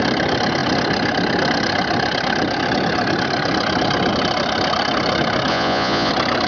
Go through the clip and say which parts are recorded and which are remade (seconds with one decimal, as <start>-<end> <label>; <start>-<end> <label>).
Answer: 0.0-5.5 recorded; 5.5-6.1 remade; 6.1-6.5 recorded